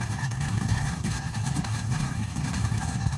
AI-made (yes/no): yes